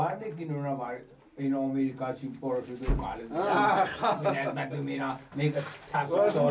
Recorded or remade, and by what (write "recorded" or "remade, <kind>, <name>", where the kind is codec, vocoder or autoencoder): recorded